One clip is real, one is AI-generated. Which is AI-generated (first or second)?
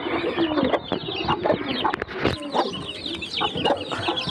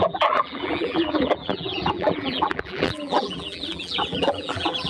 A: second